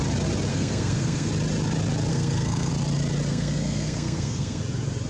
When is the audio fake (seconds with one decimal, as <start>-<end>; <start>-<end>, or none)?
0.5-1.3; 2.1-2.7; 3.3-4.6